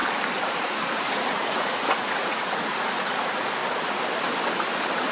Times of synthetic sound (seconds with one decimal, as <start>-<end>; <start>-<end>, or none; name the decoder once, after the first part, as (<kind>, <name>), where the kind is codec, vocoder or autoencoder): 0.5-3.6 (vocoder, Vocos)